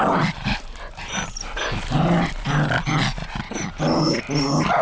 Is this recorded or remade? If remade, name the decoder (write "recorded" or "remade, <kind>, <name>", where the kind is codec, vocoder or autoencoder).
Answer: recorded